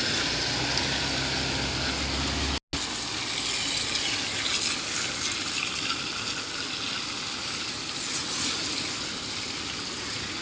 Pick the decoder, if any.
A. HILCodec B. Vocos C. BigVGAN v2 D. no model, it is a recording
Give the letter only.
D